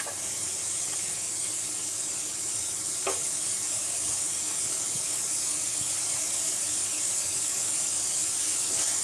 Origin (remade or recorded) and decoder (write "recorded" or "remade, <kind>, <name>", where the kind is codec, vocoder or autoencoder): remade, codec, DAC